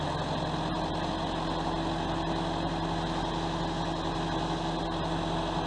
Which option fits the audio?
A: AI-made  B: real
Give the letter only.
B